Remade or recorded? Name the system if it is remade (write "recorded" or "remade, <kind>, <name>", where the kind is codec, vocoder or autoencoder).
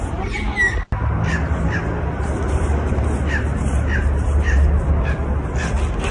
recorded